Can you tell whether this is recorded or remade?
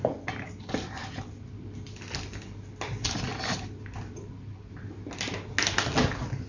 recorded